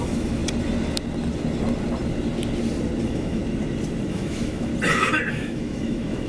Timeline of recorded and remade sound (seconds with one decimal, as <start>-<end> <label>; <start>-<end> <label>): 0.0-0.4 remade; 0.4-3.0 recorded; 3.0-3.4 remade; 3.4-4.1 recorded; 4.1-4.7 remade; 4.7-5.3 recorded; 5.3-6.3 remade

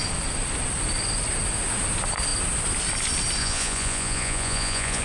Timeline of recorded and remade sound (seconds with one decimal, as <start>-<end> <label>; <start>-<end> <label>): 0.0-3.4 recorded; 3.4-5.0 remade